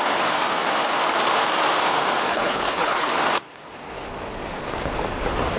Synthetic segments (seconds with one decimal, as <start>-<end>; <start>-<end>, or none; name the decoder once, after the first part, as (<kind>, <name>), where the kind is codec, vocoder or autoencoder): 2.3-3.1 (codec, HILCodec)